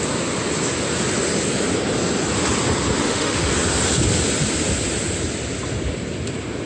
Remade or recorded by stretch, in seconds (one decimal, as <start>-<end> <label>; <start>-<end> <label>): 0.0-3.0 recorded; 3.0-3.5 remade; 3.5-6.7 recorded